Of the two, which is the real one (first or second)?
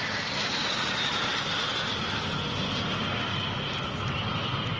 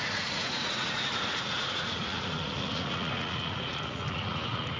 first